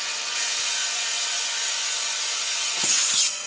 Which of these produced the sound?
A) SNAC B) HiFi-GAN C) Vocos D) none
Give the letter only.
C